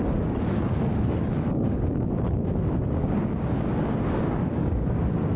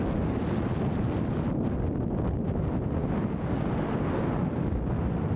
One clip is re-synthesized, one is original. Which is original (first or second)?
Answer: second